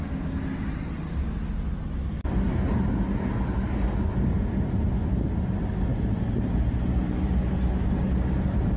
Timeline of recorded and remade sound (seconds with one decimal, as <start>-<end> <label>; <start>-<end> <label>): 0.0-8.8 recorded

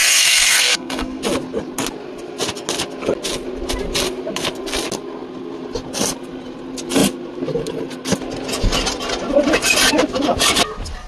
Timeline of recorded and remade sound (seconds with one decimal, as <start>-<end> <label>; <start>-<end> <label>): 0.0-1.2 remade; 1.2-11.1 recorded

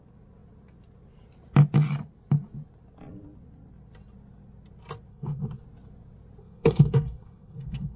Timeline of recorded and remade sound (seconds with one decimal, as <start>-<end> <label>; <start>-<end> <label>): 0.0-5.1 recorded; 5.1-5.6 remade; 5.6-6.4 recorded; 6.4-8.0 remade

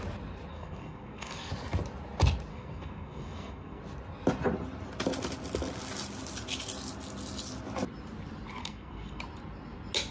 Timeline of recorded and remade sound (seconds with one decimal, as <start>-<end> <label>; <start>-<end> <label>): 0.0-0.5 recorded; 0.5-1.5 remade; 1.5-2.5 recorded; 2.5-3.8 remade; 3.8-8.6 recorded; 8.6-9.2 remade; 9.2-10.1 recorded

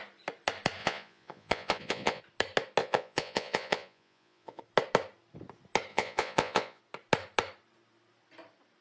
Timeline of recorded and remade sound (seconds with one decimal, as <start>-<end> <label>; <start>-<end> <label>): 0.0-0.8 recorded; 0.8-2.2 remade; 2.2-2.8 recorded; 2.8-4.6 remade; 4.6-5.9 recorded; 5.9-6.8 remade; 6.8-8.8 recorded

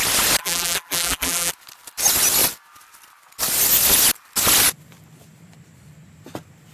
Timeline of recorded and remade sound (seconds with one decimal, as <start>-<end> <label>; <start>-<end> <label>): 0.0-0.4 recorded; 0.4-1.5 remade; 1.5-6.7 recorded

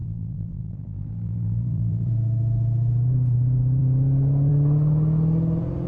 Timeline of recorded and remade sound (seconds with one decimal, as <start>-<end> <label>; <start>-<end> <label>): 0.0-2.1 remade; 2.1-5.9 recorded